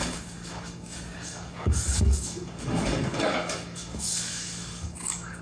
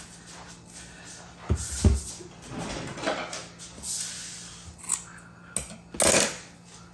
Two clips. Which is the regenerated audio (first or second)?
first